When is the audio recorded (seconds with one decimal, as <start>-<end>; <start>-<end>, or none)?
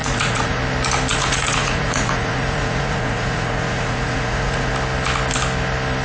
0.6-1.1; 4.7-6.0